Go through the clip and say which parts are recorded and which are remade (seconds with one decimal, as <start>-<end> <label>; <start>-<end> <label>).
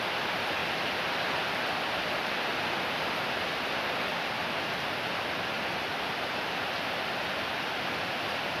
0.0-8.6 recorded